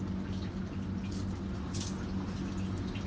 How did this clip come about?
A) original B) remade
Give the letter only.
A